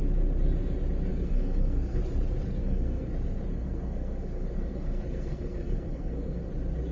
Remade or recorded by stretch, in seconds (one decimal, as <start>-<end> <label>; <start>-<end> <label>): 0.0-1.1 recorded; 1.1-2.0 remade; 2.0-2.6 recorded; 2.6-3.1 remade; 3.1-3.5 recorded; 3.5-6.5 remade; 6.5-6.9 recorded